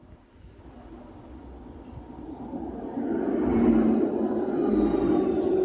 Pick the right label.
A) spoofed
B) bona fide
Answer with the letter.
B